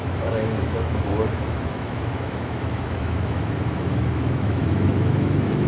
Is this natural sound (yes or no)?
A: no